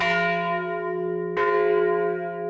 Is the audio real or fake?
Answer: real